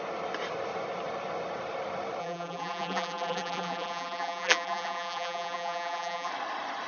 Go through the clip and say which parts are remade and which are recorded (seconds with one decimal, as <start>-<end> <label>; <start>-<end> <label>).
0.0-2.2 recorded; 2.2-6.3 remade; 6.3-6.9 recorded